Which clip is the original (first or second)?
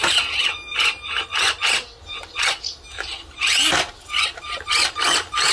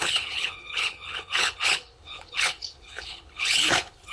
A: first